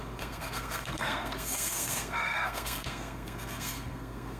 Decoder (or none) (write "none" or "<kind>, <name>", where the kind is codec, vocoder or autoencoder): codec, SNAC